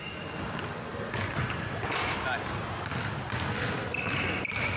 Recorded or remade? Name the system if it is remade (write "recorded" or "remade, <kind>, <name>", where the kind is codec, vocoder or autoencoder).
recorded